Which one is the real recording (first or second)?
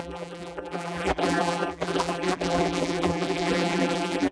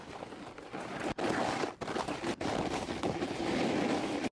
second